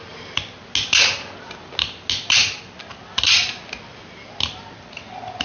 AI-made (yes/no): no